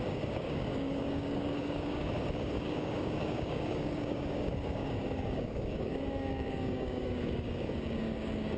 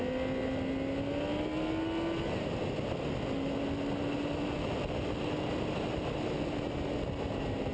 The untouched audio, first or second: second